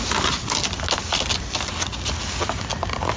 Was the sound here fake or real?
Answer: real